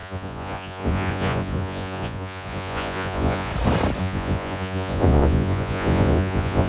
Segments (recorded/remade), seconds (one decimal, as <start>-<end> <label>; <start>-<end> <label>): 0.0-3.5 remade; 3.5-4.0 recorded; 4.0-6.7 remade